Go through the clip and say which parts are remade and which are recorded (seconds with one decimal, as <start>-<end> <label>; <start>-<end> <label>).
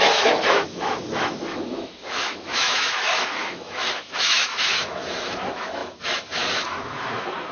0.0-7.5 remade